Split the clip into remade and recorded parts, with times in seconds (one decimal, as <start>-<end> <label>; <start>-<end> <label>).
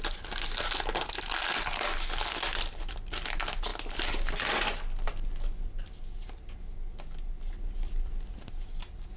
0.0-9.2 recorded